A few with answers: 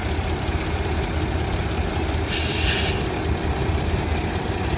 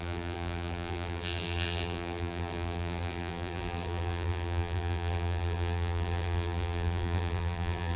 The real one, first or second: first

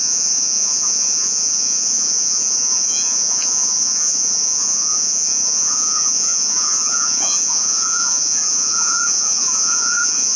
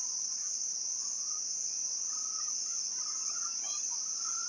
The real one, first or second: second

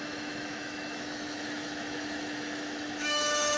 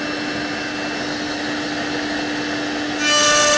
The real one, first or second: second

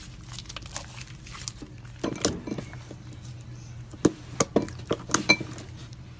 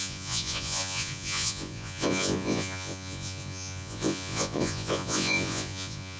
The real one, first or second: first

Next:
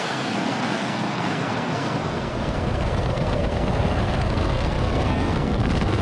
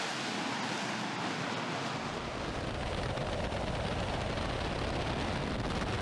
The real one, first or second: second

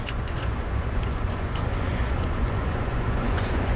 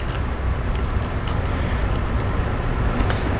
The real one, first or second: second